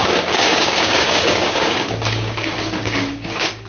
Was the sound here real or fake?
fake